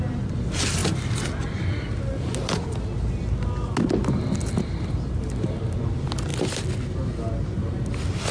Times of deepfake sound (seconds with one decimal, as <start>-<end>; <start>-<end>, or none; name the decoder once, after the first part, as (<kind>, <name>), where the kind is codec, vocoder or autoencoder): none